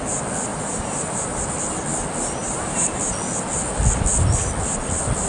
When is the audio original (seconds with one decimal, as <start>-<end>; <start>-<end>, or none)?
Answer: 0.0-0.5; 1.4-2.4; 3.0-5.3